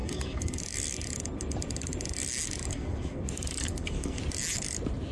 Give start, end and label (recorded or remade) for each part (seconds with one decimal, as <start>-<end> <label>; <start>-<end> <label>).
0.0-0.6 remade; 0.6-2.7 recorded; 2.7-3.2 remade; 3.2-3.6 recorded; 3.6-4.2 remade; 4.2-5.1 recorded